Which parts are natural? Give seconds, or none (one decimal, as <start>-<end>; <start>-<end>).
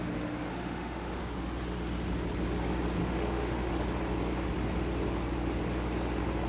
0.0-0.5; 1.2-3.0; 3.7-6.5